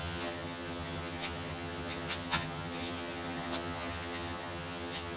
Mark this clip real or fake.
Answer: fake